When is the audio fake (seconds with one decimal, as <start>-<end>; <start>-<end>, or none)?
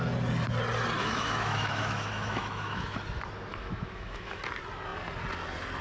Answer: 1.0-3.0; 3.5-4.4